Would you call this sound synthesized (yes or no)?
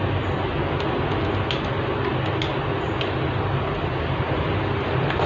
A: no